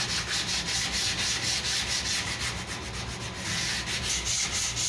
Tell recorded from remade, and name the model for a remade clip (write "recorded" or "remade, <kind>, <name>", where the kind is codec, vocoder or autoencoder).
recorded